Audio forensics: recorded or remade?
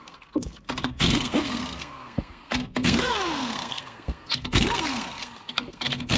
remade